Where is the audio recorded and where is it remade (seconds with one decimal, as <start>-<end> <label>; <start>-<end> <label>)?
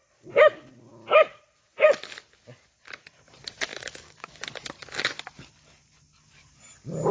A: 0.0-3.7 recorded; 3.7-4.4 remade; 4.4-7.1 recorded